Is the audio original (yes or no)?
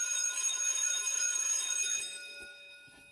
no